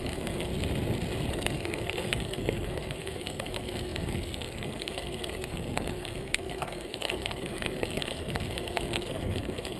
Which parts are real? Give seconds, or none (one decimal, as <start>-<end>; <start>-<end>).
0.5-1.3

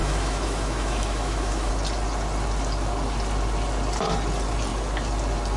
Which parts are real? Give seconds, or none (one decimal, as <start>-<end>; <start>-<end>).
1.7-5.6

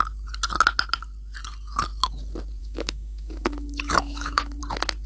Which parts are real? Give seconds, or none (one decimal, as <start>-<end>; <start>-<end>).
0.0-2.6; 4.6-5.1